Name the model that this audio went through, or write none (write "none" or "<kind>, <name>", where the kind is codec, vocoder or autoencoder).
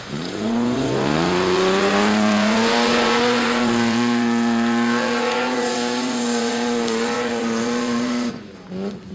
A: vocoder, Vocos